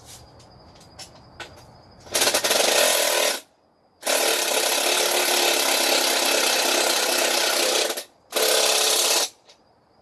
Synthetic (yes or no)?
no